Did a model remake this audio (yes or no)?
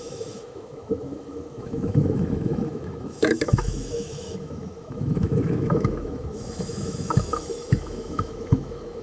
yes